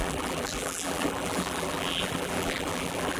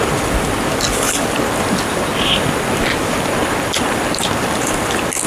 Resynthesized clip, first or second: first